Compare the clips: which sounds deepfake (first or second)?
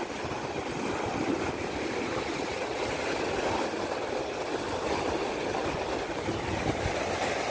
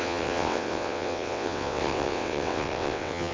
second